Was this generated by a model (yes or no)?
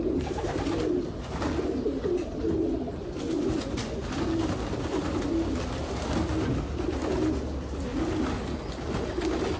no